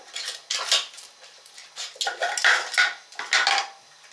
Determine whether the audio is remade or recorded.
recorded